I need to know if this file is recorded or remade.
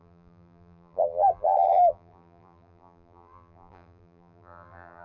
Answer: remade